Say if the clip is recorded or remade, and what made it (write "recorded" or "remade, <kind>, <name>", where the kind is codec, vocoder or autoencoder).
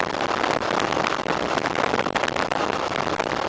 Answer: remade, vocoder, BigVGAN v2